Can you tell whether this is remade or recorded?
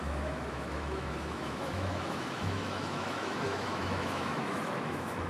remade